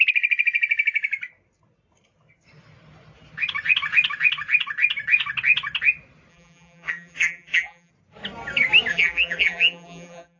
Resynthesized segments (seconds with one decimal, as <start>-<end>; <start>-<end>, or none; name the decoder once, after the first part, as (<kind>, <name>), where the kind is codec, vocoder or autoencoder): 6.3-7.9 (vocoder, BigVGAN v2); 8.9-10.4